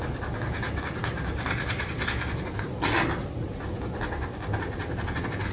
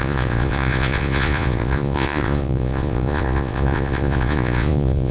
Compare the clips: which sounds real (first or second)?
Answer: first